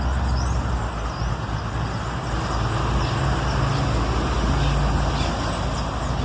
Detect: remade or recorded recorded